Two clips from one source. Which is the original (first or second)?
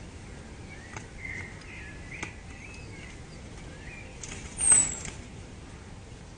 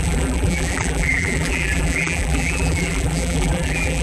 first